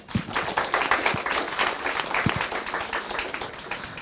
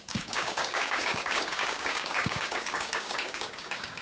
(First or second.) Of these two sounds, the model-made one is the second